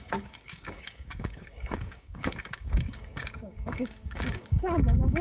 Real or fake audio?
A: fake